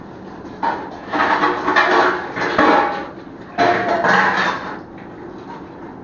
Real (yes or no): yes